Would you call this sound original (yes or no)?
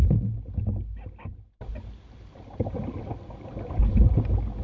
yes